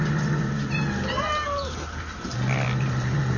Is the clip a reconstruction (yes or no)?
no